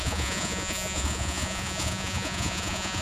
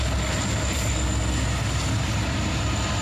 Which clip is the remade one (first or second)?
first